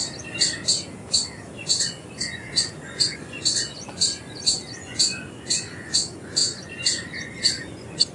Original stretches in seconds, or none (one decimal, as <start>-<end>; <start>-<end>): 0.0-1.6

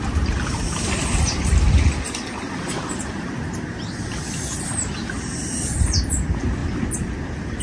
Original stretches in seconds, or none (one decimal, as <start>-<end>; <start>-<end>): 0.0-7.6